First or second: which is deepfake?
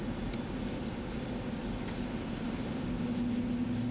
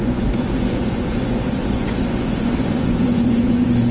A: second